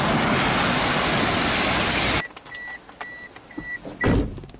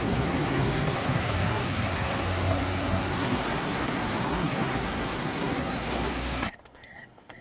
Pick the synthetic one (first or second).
second